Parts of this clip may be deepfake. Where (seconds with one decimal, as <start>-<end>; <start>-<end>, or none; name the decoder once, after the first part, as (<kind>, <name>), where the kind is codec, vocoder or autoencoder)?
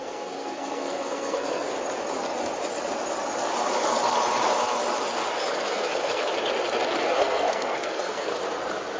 0.0-1.7 (codec, SNAC); 5.5-6.3; 7.0-8.3